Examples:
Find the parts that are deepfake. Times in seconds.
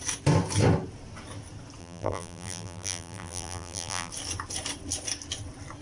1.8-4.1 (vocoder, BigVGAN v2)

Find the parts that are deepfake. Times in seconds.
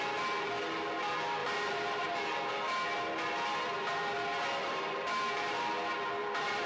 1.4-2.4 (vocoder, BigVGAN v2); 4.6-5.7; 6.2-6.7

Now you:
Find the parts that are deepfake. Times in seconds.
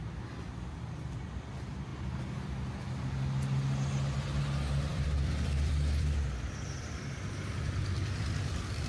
4.9-7.0 (vocoder, BigVGAN v2)